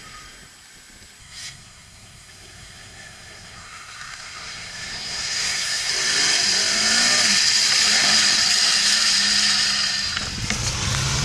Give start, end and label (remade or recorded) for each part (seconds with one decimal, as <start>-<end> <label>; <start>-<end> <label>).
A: 0.0-1.2 recorded; 1.2-5.9 remade; 5.9-11.2 recorded